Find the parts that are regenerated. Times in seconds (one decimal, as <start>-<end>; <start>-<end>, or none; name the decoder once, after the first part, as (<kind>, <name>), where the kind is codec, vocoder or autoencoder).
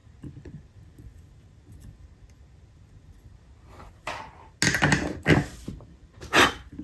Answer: 0.0-1.1 (vocoder, BigVGAN v2); 5.2-6.8